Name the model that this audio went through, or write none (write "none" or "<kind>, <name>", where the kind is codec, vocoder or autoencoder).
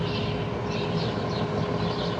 none